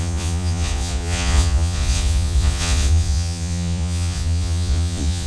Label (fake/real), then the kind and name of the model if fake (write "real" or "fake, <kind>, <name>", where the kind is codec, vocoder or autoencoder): fake, vocoder, Vocos